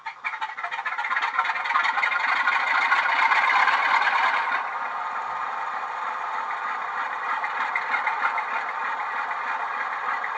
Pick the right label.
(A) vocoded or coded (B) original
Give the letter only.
B